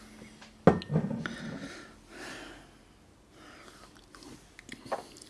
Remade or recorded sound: recorded